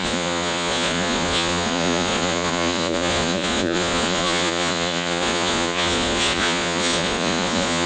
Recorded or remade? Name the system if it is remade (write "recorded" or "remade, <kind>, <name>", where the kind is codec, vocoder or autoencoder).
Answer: remade, vocoder, Vocos